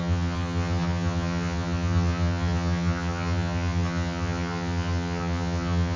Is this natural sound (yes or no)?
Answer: no